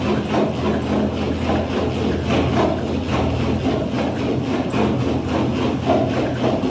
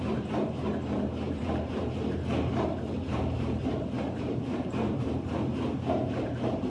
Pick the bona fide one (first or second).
first